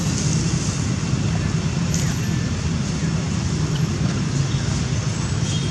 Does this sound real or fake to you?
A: real